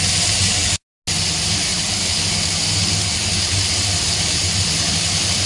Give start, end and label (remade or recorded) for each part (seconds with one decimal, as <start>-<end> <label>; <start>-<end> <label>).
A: 0.0-5.5 recorded